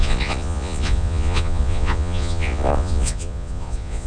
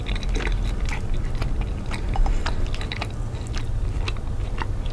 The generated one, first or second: first